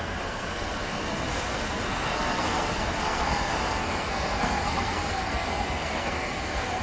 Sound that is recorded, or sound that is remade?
remade